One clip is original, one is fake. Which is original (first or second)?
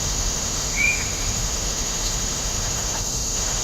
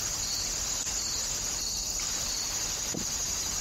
second